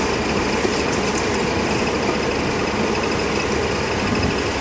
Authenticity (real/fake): real